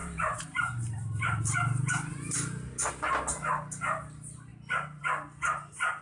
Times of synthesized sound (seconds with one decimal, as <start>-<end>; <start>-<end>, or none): 0.0-1.4